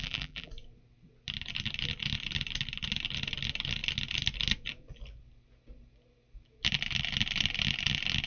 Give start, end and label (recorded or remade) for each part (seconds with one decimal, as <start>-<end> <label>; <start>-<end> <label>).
0.0-0.5 remade; 0.5-8.3 recorded